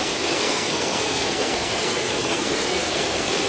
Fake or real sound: fake